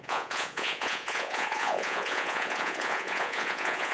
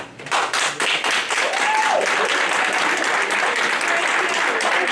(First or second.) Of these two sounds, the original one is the second